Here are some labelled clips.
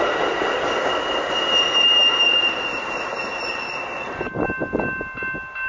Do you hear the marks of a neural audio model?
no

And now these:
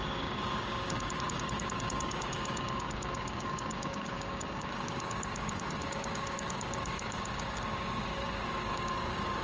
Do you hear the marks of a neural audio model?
yes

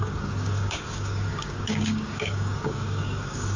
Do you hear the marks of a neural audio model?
yes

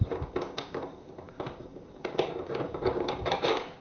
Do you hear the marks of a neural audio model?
yes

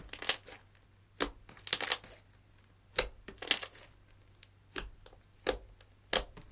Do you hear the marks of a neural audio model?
no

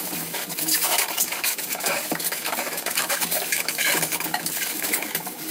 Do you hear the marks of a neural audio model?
yes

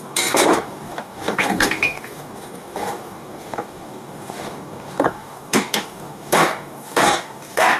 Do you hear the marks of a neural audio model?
yes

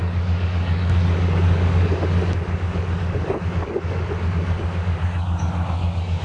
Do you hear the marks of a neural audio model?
yes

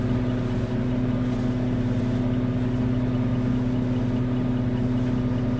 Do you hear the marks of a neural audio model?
no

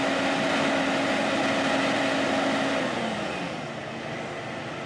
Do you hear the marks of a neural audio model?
no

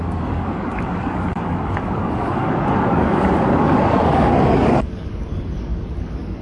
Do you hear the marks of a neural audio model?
yes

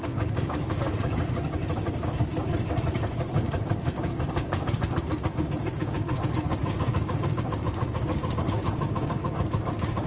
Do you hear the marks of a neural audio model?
yes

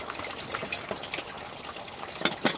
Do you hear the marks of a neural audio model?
no